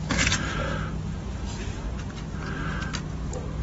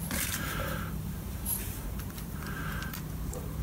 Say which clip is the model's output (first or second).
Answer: second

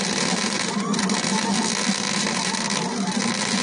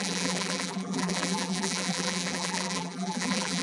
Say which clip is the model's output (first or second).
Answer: second